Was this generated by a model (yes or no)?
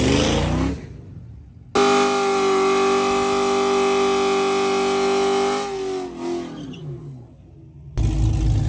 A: no